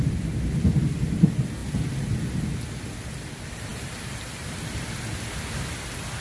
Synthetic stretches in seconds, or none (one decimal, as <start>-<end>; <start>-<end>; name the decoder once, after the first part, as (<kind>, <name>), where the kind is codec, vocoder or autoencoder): none